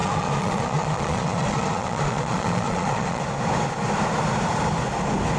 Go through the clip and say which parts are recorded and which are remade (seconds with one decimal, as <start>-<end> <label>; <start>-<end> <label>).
0.0-3.2 remade; 3.2-5.4 recorded